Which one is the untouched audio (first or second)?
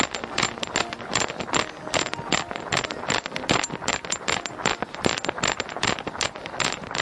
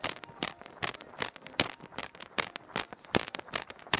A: first